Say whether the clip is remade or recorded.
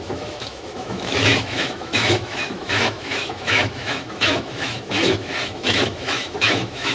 remade